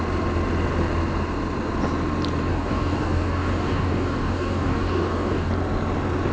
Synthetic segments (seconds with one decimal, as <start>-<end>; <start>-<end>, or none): 2.5-5.5